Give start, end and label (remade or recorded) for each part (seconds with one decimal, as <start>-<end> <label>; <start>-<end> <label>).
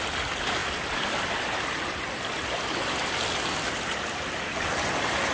0.0-5.3 recorded